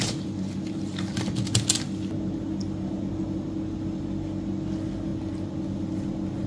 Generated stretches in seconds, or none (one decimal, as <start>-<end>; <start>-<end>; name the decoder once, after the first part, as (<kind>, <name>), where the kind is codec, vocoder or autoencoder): none